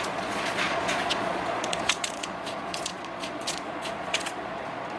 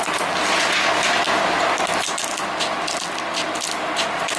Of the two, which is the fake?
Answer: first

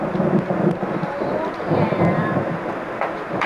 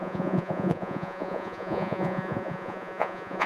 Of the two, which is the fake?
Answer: second